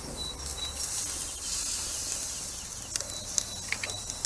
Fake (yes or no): no